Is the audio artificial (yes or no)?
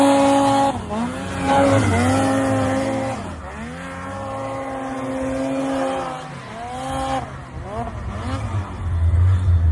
no